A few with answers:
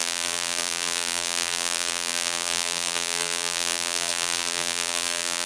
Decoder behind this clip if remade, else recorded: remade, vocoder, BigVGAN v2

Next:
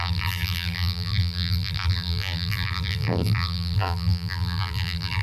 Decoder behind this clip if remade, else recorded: remade, vocoder, BigVGAN v2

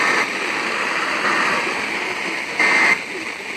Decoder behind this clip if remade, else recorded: remade, vocoder, BigVGAN v2